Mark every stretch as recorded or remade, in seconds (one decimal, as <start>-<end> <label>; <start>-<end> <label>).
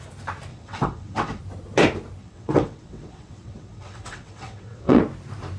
0.0-0.5 recorded; 0.5-1.4 remade; 1.4-2.2 recorded; 2.2-5.0 remade; 5.0-5.6 recorded